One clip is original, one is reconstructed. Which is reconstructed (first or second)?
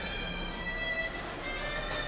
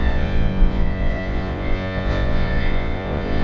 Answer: second